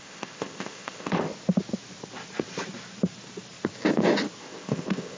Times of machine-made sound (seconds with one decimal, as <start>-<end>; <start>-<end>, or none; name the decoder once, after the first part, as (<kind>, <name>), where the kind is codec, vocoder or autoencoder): 0.0-1.3 (codec, ZipCodec); 4.4-5.2